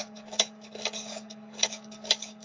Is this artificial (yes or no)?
yes